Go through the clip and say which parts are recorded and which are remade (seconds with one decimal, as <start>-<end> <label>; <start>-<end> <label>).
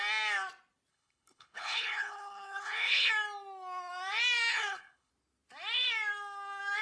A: 0.0-0.9 recorded; 0.9-3.1 remade; 3.1-4.5 recorded; 4.5-5.1 remade; 5.1-6.8 recorded